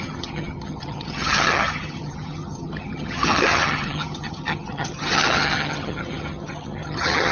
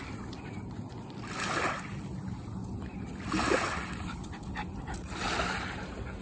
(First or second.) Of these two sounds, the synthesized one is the first